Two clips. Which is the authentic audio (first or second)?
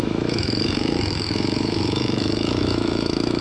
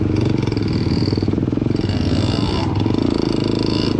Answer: second